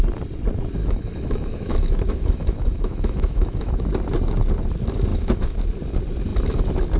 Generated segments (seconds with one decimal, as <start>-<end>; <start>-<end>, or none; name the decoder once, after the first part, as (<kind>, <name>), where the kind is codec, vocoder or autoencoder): 0.8-3.8 (autoencoder, DAC-VAE); 5.1-5.6